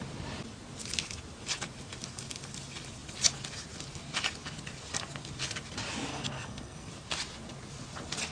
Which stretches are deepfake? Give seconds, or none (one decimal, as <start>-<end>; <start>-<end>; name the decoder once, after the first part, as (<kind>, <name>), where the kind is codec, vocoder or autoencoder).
6.1-6.9 (codec, SNAC)